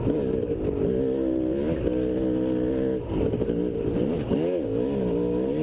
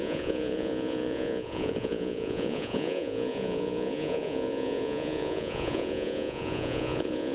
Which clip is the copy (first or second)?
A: second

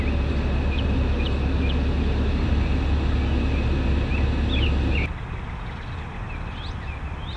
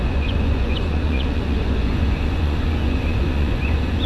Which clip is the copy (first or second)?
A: second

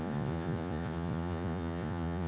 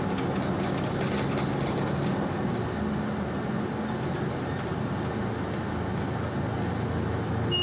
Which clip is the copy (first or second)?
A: first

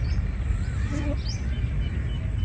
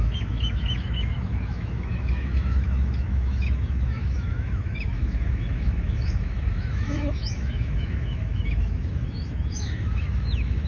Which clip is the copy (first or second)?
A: second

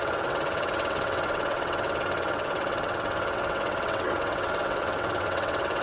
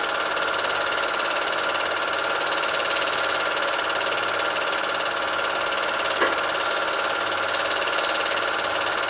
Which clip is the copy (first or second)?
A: first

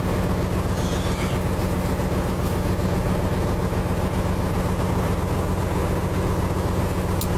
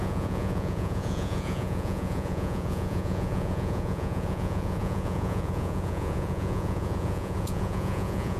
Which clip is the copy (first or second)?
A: second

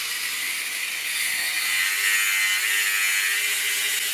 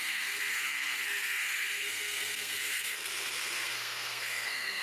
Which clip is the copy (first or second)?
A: second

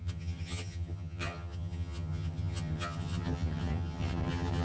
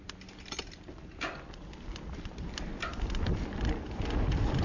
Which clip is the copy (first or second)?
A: first